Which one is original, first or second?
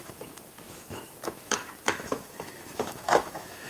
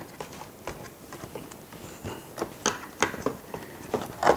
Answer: second